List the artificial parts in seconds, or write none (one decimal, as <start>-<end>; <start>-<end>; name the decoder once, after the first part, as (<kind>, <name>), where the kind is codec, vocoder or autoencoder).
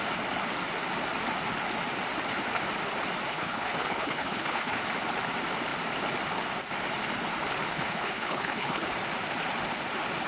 3.3-4.8 (codec, HILCodec); 7.7-8.9